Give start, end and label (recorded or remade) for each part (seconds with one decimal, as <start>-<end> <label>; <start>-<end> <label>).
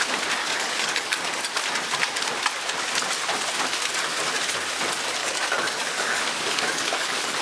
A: 0.0-0.4 recorded; 0.4-1.3 remade; 1.3-5.2 recorded; 5.2-7.4 remade